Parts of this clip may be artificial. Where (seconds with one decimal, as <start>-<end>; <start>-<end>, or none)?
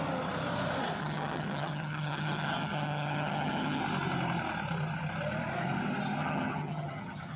1.0-3.8; 6.2-7.4